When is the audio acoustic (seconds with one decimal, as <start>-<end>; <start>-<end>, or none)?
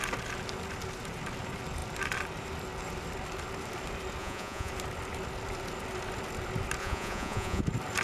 0.0-4.2; 4.7-6.8; 7.6-8.0